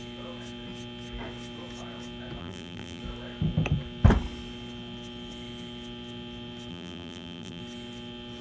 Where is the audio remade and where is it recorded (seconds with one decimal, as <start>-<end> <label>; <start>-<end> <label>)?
0.0-2.4 recorded; 2.4-3.0 remade; 3.0-6.7 recorded; 6.7-7.6 remade; 7.6-8.4 recorded